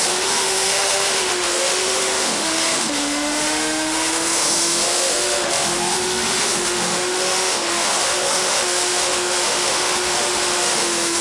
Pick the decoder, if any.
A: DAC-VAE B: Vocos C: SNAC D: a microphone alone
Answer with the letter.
A